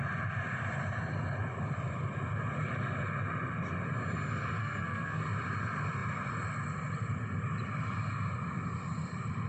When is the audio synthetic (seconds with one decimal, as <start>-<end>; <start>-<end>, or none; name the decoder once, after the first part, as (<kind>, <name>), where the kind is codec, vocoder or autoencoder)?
4.6-5.2 (codec, SNAC)